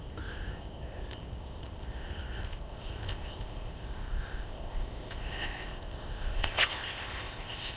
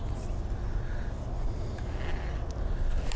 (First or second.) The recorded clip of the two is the second